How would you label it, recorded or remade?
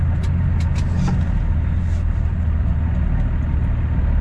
recorded